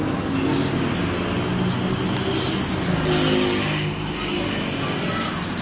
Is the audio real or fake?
real